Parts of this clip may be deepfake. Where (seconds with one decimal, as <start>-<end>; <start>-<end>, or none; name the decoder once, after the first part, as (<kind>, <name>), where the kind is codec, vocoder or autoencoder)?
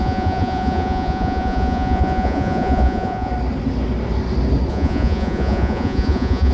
0.0-3.3 (vocoder, Vocos); 4.7-6.5